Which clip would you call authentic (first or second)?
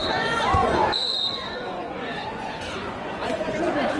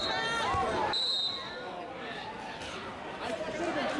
second